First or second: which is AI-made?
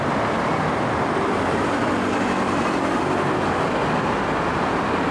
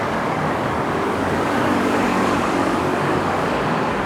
second